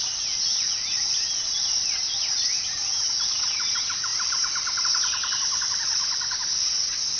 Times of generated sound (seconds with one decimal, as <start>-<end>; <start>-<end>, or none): none